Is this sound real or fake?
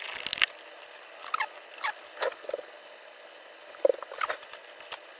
real